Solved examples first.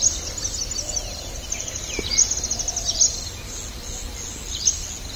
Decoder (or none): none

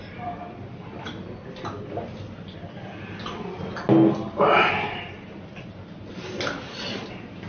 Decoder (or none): none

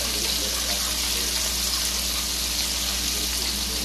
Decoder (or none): none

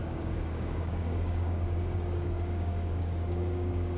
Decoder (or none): codec, DAC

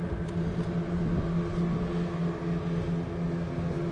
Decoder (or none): none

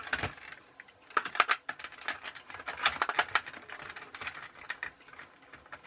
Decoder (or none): none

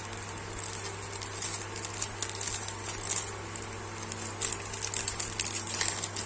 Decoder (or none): none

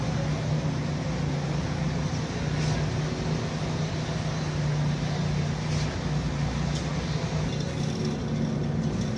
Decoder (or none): none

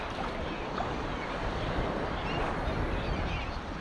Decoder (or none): none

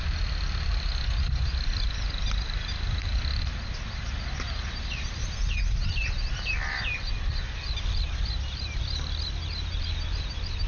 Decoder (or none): none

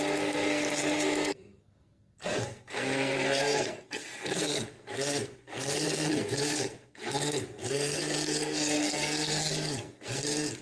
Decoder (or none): codec, SNAC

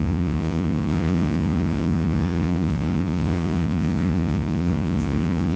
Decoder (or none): vocoder, Vocos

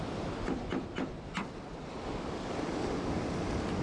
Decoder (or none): none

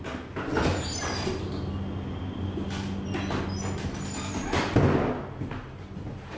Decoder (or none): none